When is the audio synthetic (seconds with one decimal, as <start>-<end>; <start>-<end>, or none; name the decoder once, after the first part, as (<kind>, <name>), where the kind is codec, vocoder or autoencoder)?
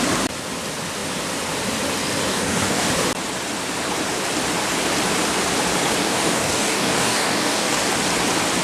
2.3-2.9 (codec, DAC); 6.0-7.9